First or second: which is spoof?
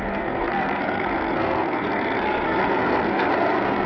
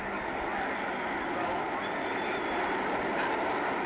first